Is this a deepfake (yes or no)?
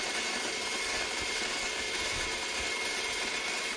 yes